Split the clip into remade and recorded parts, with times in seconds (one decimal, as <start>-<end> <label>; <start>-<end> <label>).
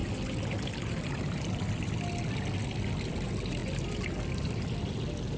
0.0-5.4 recorded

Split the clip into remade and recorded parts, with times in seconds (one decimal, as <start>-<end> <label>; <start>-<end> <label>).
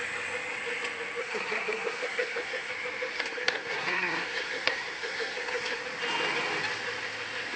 0.0-1.2 recorded; 1.2-2.7 remade; 2.7-3.1 recorded; 3.1-5.8 remade; 5.8-7.6 recorded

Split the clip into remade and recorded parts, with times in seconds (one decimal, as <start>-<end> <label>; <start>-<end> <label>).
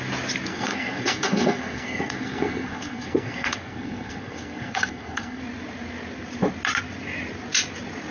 0.0-0.5 recorded; 0.5-5.4 remade; 5.4-8.1 recorded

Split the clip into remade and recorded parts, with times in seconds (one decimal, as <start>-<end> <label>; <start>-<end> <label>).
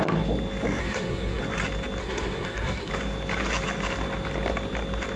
0.0-0.8 recorded; 0.8-1.4 remade; 1.4-2.0 recorded; 2.0-2.9 remade; 2.9-5.2 recorded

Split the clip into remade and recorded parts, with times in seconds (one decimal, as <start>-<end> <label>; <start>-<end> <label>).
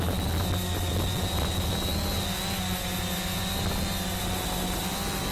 0.0-5.3 recorded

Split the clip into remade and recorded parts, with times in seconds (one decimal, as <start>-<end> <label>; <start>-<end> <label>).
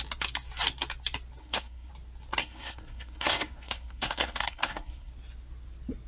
0.0-1.4 recorded; 1.4-1.9 remade; 1.9-2.4 recorded; 2.4-5.1 remade; 5.1-6.1 recorded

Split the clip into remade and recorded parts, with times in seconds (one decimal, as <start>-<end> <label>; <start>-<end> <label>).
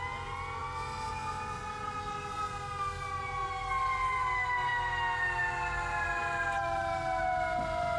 0.0-8.0 recorded